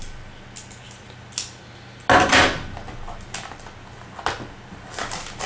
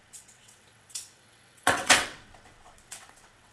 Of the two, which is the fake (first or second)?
second